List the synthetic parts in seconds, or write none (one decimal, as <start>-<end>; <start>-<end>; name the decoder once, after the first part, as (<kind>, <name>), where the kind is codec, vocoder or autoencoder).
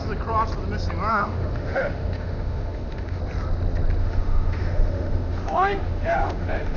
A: 1.1-3.2 (autoencoder, DAC-VAE); 4.0-6.8